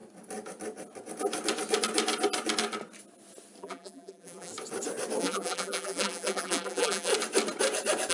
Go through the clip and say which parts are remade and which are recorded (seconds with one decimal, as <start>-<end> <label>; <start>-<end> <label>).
0.0-3.6 recorded; 3.6-4.5 remade; 4.5-5.2 recorded; 5.2-7.1 remade; 7.1-8.1 recorded